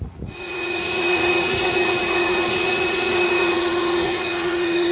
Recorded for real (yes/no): no